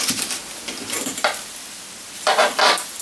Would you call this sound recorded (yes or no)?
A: yes